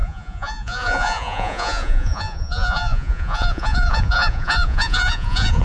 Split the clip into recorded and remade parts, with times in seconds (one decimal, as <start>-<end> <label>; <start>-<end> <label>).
0.0-5.6 remade